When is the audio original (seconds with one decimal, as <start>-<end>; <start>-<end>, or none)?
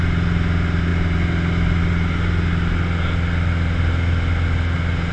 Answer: 0.0-5.1